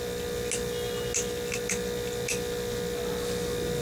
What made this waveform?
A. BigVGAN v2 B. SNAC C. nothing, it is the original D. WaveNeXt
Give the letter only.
C